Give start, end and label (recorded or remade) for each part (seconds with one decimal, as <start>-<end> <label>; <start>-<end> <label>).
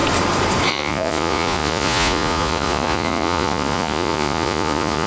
0.0-0.7 recorded; 0.7-5.1 remade